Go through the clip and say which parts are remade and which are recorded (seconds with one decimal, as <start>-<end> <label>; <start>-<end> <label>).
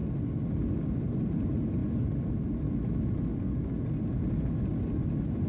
0.0-0.9 recorded; 0.9-1.8 remade; 1.8-5.1 recorded; 5.1-5.5 remade